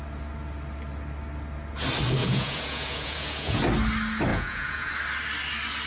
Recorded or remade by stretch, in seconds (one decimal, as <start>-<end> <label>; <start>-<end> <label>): 0.0-2.2 recorded; 2.2-3.6 remade; 3.6-4.3 recorded; 4.3-4.9 remade; 4.9-5.9 recorded